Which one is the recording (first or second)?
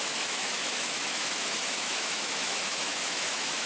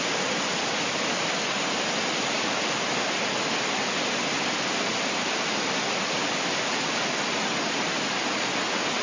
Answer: second